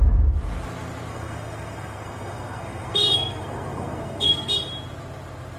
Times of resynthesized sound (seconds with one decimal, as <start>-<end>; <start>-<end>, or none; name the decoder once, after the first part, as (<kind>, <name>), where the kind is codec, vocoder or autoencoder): 1.1-4.5 (codec, SNAC)